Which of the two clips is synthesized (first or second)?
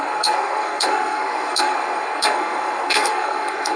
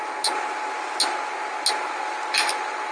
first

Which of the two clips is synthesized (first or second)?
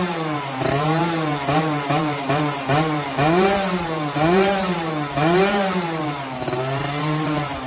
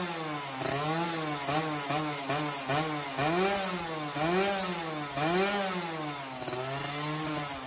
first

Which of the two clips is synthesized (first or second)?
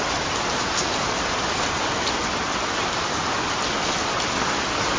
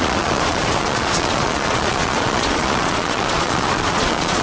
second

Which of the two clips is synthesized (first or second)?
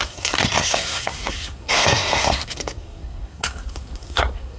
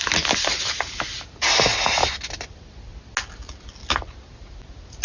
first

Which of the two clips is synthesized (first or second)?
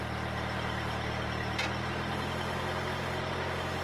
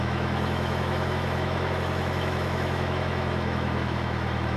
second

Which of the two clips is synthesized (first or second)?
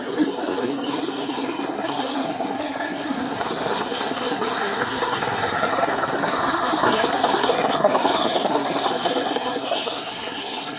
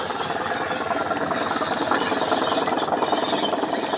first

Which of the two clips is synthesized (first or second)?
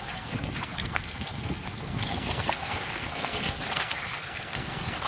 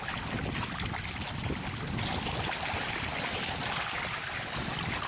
first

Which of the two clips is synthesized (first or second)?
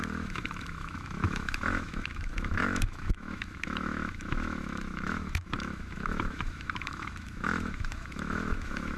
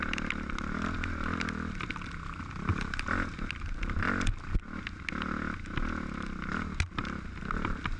first